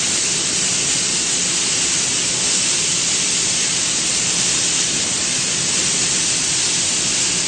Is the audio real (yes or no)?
yes